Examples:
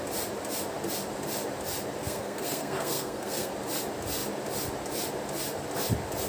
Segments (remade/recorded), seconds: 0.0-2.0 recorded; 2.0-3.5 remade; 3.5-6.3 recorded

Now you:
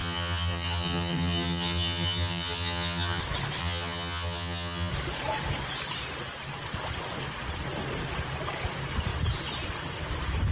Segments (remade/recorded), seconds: 0.0-3.2 remade; 3.2-3.6 recorded; 3.6-4.9 remade; 4.9-10.5 recorded